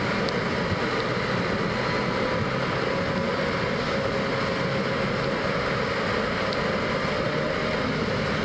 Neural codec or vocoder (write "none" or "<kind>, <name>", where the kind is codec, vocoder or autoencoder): none